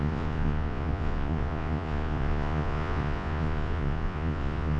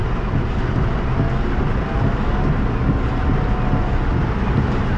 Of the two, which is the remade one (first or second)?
first